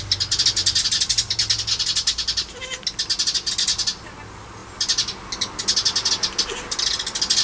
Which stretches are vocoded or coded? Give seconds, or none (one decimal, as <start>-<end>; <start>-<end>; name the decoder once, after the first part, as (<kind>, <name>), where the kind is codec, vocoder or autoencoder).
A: none